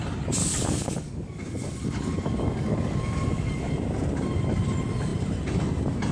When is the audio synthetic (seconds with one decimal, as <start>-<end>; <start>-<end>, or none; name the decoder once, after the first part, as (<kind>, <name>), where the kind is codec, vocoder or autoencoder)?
0.4-3.7 (codec, DAC)